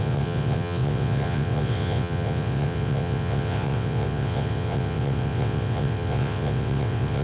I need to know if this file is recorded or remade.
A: remade